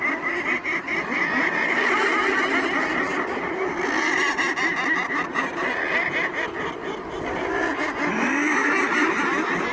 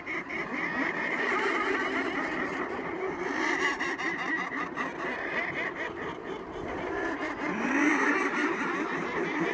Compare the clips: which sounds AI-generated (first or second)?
second